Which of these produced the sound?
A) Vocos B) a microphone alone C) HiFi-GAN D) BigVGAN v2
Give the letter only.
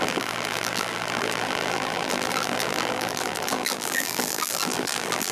D